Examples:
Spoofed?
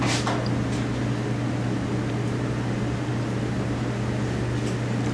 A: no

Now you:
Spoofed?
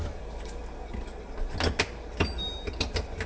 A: no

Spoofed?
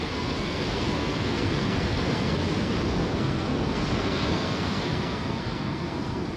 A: yes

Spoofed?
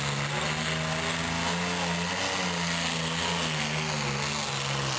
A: no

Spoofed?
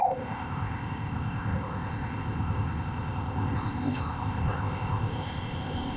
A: yes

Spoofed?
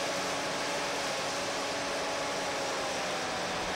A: no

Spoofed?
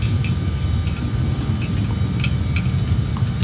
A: no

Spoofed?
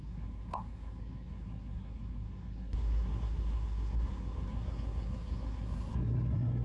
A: yes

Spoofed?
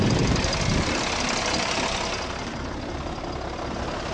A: no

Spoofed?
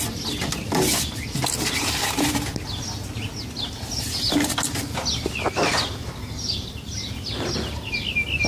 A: no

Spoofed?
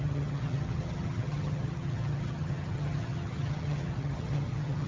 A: yes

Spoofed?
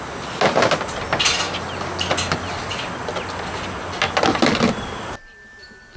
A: no